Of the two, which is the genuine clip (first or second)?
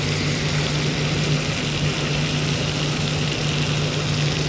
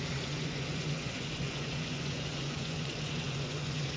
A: first